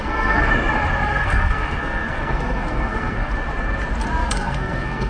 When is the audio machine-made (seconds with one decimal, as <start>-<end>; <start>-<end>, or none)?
0.0-0.5; 1.1-3.3; 4.2-5.1